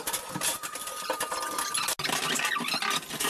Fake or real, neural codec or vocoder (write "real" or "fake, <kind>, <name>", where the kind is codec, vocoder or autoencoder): real